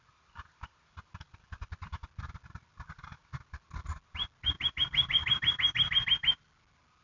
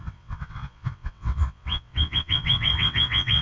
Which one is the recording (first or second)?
first